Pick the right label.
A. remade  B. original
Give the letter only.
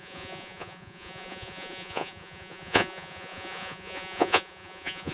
A